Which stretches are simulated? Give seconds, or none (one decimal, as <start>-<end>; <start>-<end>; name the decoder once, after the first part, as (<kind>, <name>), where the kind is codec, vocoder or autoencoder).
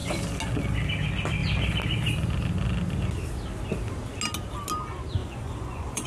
5.2-6.1 (vocoder, Vocos)